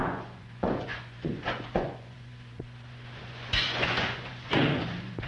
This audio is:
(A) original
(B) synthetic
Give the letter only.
B